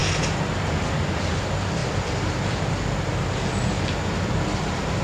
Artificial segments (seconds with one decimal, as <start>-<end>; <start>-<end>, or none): none